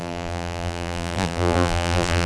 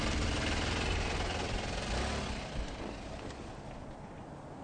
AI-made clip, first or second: first